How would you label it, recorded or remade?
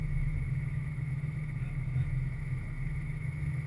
remade